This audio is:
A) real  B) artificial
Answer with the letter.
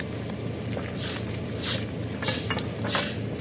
A